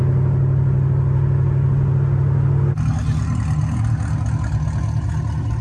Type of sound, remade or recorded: recorded